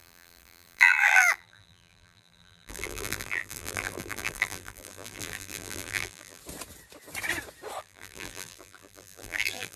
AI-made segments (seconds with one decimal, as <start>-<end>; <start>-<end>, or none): 0.0-6.4; 7.8-9.8

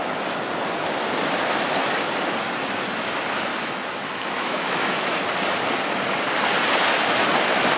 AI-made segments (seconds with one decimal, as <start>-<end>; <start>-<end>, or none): 0.0-0.5; 3.5-5.1

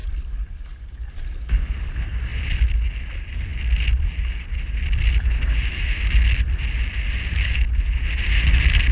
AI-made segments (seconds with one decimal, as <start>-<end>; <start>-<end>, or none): none